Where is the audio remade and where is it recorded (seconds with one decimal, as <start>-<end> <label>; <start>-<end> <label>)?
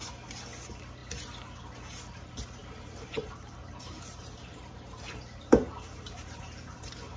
0.0-2.6 recorded; 2.6-6.8 remade; 6.8-7.2 recorded